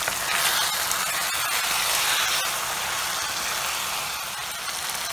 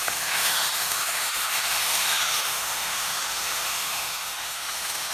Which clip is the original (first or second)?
first